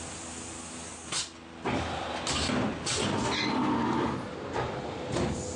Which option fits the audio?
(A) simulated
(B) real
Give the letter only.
B